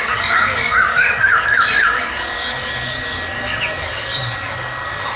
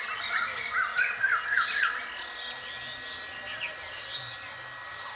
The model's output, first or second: first